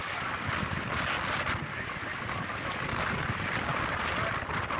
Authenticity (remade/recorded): recorded